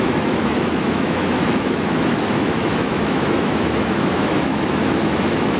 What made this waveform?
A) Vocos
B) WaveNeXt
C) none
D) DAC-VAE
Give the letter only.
D